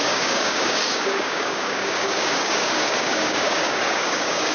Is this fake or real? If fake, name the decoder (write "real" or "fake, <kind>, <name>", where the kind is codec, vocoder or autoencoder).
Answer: fake, codec, DAC